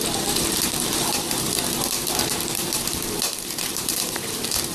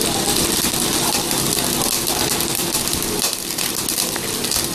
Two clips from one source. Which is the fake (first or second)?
first